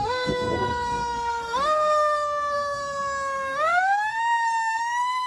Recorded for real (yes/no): no